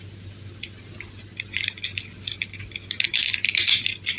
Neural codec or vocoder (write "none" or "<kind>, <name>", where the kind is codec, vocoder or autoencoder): none